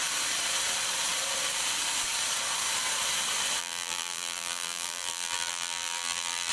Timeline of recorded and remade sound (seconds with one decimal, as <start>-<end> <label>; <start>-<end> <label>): 0.0-3.6 recorded; 3.6-6.5 remade